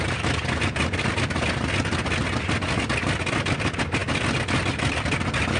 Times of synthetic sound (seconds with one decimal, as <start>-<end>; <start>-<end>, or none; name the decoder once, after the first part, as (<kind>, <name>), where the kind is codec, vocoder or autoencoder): none